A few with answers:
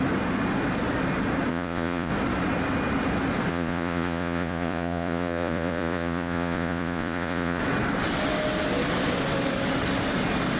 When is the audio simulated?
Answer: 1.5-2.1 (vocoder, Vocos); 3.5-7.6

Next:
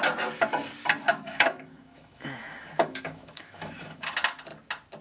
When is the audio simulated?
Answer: 1.1-4.1 (autoencoder, DAC-VAE)

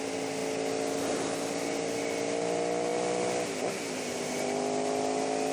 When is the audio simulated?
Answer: none

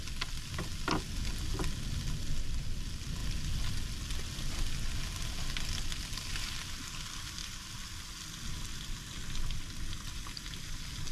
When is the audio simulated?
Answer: none

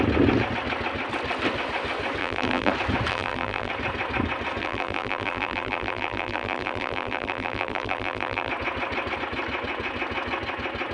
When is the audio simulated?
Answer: 2.2-2.7 (vocoder, BigVGAN v2); 3.1-3.7; 4.6-8.5

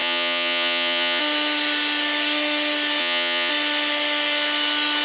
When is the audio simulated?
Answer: 0.0-1.2 (vocoder, Vocos); 3.0-3.5

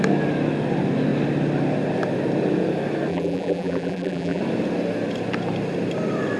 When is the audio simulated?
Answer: 3.1-4.4 (vocoder, BigVGAN v2)

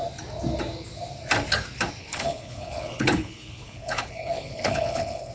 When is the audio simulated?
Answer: 2.0-5.3 (codec, HILCodec)